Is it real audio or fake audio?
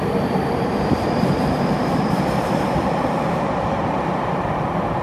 fake